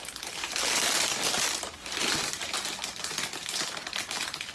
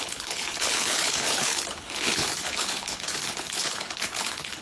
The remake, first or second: second